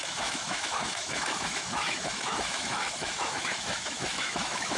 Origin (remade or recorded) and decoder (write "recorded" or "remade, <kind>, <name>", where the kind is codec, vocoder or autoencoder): remade, autoencoder, DAC-VAE